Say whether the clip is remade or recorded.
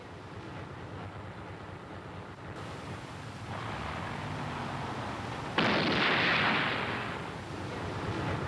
recorded